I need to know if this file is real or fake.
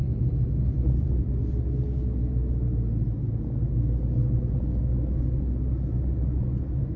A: real